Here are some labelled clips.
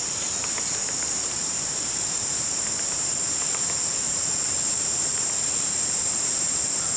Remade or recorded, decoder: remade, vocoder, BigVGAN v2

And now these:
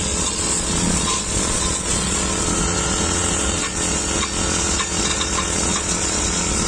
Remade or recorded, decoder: remade, vocoder, Vocos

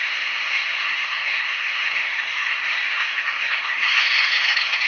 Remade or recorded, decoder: remade, codec, SNAC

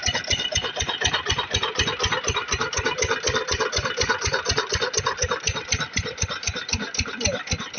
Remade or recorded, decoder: remade, vocoder, BigVGAN v2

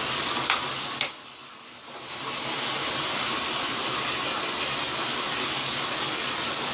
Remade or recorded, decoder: recorded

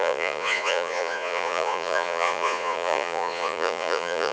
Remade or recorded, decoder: remade, vocoder, Vocos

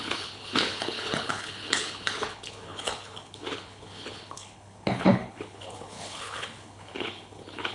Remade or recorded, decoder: remade, codec, HILCodec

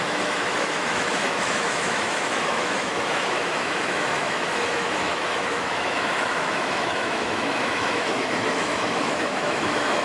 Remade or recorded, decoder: remade, autoencoder, DAC-VAE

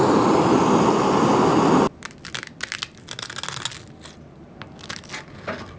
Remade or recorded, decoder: recorded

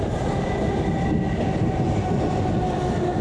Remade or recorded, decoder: recorded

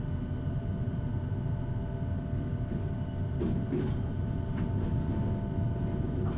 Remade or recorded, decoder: recorded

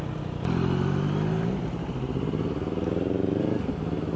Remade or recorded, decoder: recorded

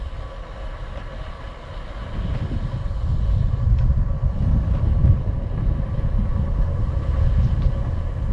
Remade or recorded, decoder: recorded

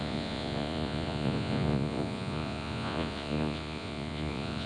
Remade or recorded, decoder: remade, vocoder, Vocos